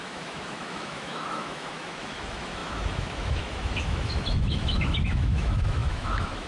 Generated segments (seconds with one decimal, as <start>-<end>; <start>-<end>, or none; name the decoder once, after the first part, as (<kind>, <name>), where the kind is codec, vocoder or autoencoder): 0.0-6.5 (autoencoder, DAC-VAE)